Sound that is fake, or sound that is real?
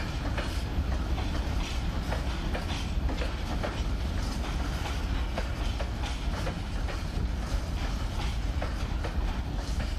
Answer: real